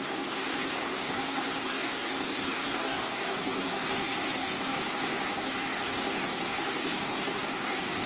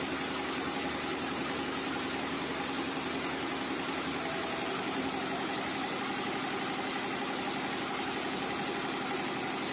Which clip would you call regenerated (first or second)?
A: first